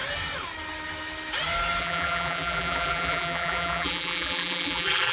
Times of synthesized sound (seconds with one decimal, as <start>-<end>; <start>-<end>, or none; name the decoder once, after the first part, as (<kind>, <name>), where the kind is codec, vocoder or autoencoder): 1.8-5.1 (vocoder, BigVGAN v2)